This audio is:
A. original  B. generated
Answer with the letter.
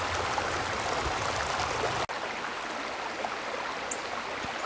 A